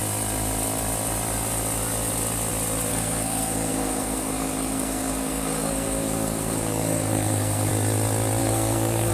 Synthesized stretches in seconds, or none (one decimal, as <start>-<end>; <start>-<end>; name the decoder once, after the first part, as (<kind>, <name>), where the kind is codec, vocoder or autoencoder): 2.9-7.7 (codec, SNAC); 8.4-9.1